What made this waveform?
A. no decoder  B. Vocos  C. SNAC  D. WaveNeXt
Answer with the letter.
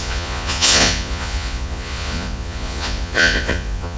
B